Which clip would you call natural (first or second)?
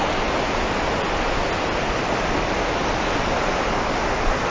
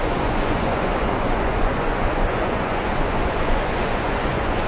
first